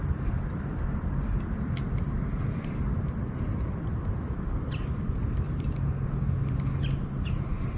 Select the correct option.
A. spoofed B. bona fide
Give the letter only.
B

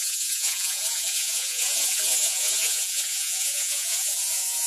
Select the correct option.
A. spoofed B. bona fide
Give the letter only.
A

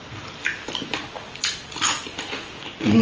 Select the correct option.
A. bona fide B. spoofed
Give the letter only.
A